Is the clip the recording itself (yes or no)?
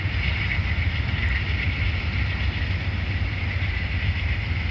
yes